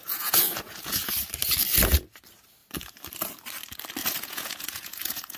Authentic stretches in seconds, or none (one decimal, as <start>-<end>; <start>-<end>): 1.1-4.0

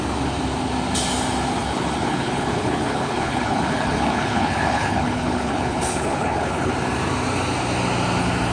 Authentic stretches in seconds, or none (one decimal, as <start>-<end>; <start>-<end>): 0.0-1.6; 6.7-8.5